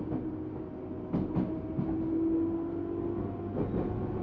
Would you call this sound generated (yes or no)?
no